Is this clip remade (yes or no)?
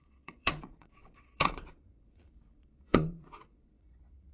yes